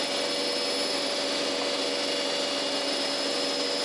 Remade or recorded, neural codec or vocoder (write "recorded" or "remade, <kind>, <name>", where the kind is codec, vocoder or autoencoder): recorded